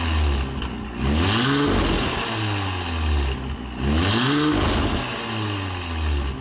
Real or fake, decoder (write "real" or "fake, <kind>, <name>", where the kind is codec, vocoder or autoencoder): real